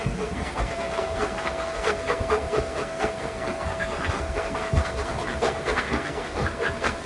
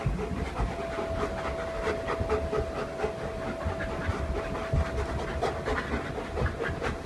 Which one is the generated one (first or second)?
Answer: first